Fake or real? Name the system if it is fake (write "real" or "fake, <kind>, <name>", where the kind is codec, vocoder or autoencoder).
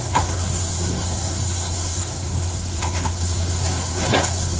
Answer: fake, codec, SNAC